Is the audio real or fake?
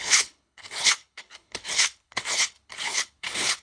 fake